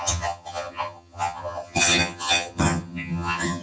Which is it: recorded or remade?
remade